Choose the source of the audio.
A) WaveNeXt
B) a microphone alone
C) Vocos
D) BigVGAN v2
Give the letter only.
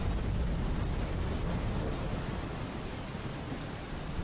B